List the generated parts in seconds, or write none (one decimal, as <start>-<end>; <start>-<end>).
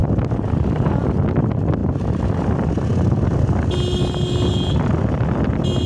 none